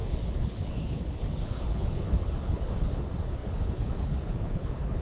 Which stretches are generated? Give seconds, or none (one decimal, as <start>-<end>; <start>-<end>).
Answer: 0.0-5.0